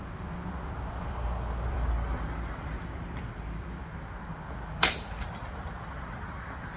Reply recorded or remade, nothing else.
remade